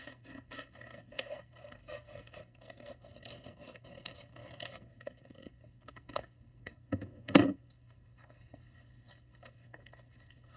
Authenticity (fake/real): fake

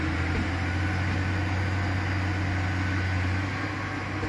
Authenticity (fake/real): real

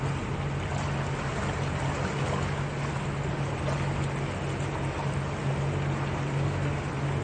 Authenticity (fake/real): real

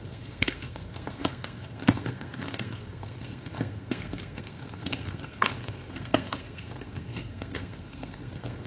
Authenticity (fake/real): fake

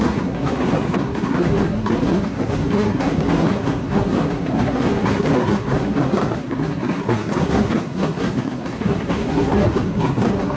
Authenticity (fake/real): fake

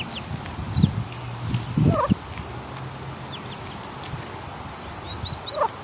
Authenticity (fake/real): real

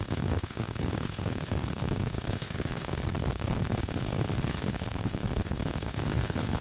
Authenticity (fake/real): fake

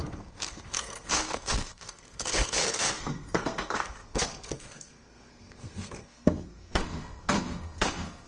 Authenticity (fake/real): fake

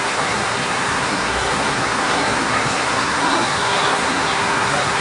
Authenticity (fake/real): fake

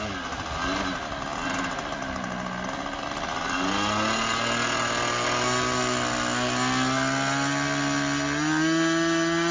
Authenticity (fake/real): real